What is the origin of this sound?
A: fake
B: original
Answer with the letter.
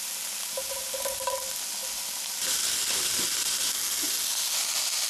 B